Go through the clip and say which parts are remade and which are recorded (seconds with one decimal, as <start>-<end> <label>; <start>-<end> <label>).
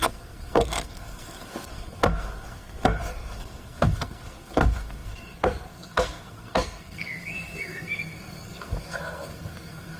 0.0-10.0 remade